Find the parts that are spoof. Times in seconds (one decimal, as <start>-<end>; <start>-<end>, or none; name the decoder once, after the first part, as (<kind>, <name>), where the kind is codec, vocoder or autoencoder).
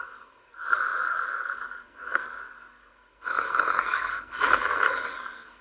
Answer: 0.0-5.6 (codec, SNAC)